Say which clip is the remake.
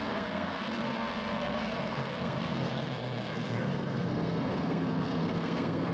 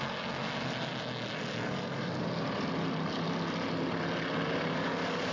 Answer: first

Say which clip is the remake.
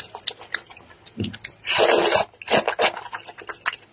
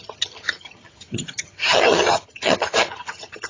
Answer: second